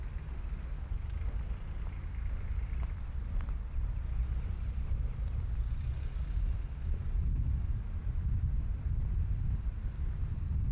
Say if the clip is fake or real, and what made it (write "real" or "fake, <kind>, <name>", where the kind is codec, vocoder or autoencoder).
real